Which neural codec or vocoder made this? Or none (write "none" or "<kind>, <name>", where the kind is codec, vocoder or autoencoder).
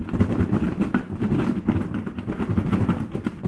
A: none